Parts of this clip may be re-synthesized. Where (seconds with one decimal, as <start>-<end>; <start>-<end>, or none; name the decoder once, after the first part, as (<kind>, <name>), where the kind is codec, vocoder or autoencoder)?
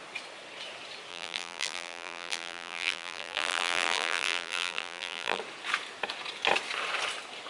1.1-5.4 (vocoder, BigVGAN v2)